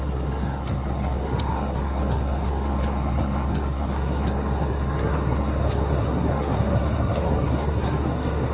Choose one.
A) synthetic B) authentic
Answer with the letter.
A